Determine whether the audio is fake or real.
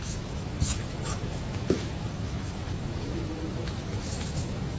fake